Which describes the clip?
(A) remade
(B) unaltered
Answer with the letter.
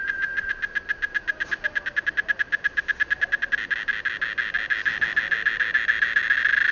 B